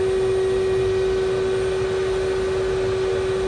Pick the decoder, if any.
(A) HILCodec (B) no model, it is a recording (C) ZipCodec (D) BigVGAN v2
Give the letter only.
B